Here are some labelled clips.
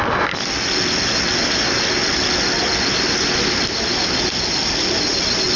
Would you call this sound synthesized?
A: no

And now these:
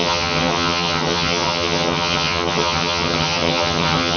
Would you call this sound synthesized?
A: yes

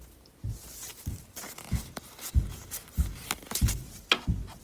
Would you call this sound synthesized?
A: no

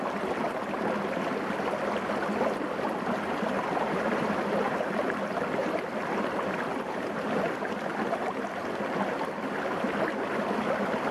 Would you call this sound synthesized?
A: no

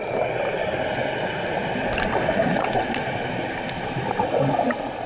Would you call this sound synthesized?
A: no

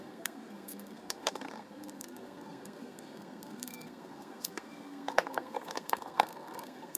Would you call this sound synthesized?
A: yes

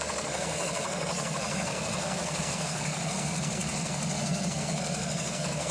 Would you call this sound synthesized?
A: yes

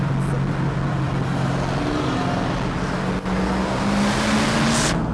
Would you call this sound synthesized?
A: no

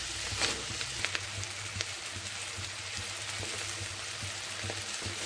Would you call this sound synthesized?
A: no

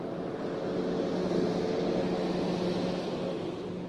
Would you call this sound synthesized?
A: no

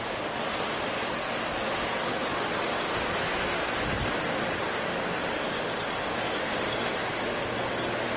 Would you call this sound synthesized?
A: no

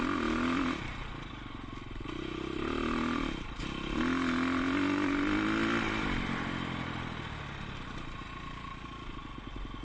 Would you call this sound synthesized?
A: no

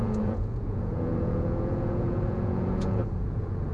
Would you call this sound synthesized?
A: yes